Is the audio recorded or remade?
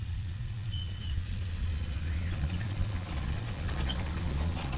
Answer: remade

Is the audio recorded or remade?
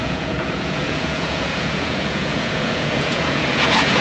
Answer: remade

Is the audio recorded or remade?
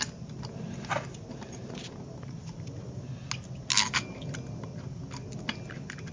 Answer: recorded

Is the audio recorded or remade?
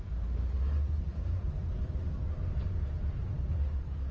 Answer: remade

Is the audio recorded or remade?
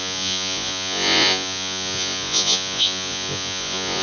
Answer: remade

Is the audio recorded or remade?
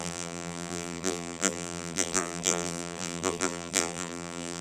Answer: remade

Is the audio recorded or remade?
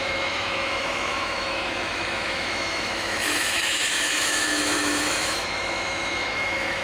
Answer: remade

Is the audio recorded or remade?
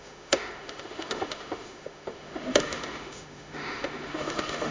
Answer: remade